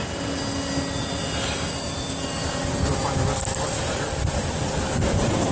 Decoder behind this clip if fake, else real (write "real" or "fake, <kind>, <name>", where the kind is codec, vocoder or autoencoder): real